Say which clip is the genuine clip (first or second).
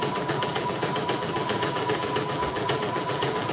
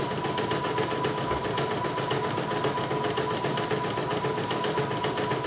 second